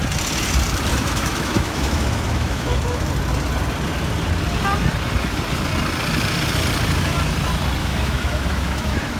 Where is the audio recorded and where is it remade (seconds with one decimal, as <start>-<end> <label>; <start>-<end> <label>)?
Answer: 0.0-0.9 recorded; 0.9-3.1 remade; 3.1-7.8 recorded; 7.8-9.2 remade